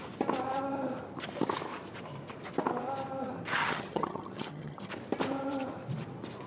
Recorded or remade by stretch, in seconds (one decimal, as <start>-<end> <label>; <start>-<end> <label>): 0.0-3.6 recorded; 3.6-4.9 remade; 4.9-6.5 recorded

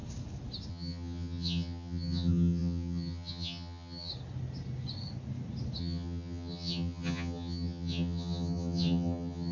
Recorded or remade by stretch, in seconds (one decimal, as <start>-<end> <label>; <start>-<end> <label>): 0.0-0.7 recorded; 0.7-4.1 remade; 4.1-5.8 recorded; 5.8-9.5 remade

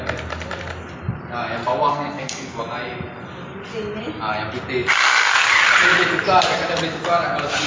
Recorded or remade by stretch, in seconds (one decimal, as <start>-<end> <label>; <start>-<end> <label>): 0.0-1.9 recorded; 1.9-2.6 remade; 2.6-7.7 recorded

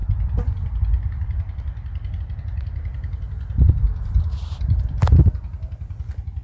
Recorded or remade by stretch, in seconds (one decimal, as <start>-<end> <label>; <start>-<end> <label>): 0.0-2.2 remade; 2.2-6.4 recorded

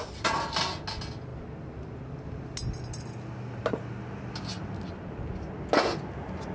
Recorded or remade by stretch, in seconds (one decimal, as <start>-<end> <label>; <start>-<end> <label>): 0.0-6.5 recorded

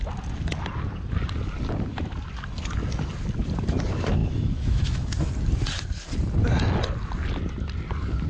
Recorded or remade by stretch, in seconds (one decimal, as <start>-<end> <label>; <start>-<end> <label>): 0.0-4.2 recorded; 4.2-5.2 remade; 5.2-8.3 recorded

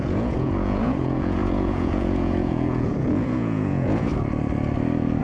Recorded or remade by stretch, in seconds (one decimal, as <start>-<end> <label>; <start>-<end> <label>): 0.0-4.1 remade; 4.1-5.2 recorded